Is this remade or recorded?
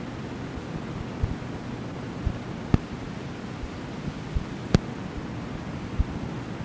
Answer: recorded